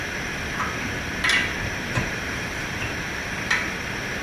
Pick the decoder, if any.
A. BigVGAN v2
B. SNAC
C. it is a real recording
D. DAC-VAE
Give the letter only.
A